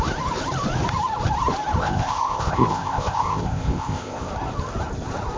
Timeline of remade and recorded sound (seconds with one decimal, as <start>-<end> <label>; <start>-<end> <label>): 0.0-1.8 recorded; 1.8-4.3 remade; 4.3-5.4 recorded